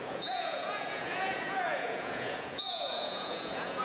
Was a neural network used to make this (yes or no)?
yes